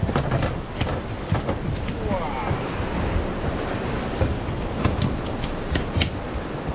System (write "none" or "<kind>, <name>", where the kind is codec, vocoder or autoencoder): none